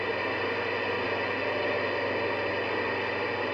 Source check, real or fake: real